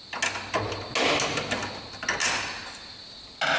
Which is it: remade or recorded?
recorded